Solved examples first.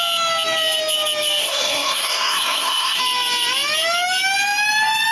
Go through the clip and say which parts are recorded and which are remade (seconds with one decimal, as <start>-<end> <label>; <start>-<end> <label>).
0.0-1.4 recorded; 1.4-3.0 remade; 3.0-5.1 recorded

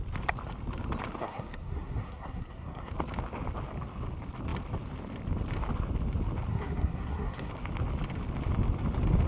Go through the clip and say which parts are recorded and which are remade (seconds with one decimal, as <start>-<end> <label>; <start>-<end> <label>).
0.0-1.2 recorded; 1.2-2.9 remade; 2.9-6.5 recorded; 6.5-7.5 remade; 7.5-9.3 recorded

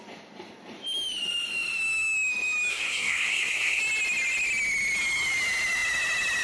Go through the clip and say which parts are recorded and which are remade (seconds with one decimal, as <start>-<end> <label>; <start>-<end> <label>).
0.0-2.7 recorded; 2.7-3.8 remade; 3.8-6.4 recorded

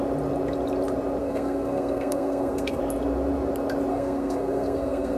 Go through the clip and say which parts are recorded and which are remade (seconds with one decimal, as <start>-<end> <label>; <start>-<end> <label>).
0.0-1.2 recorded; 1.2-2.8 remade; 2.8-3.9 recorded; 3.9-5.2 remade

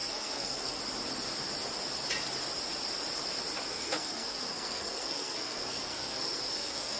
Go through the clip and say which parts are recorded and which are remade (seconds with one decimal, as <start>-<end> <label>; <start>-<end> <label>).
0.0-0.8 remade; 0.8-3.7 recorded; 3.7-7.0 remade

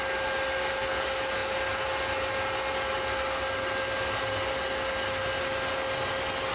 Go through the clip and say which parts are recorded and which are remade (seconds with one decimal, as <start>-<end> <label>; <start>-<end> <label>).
0.0-6.5 recorded